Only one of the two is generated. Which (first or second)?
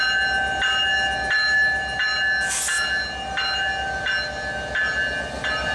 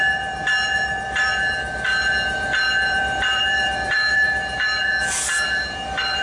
second